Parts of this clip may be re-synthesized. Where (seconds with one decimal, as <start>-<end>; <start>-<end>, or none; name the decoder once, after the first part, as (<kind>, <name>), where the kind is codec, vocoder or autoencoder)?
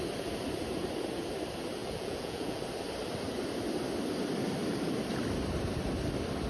1.8-2.6 (vocoder, Vocos)